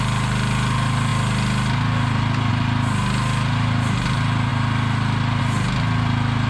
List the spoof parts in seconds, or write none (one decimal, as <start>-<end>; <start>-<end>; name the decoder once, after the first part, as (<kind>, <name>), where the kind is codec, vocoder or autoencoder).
none